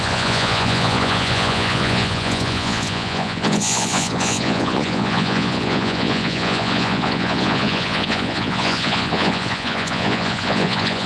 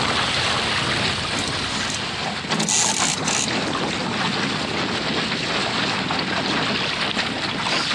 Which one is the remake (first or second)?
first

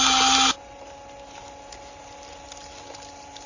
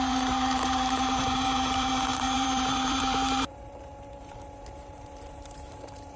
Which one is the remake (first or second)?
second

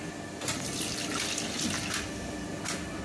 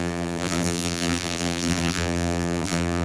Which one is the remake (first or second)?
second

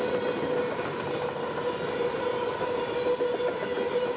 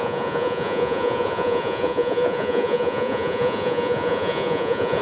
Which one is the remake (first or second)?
second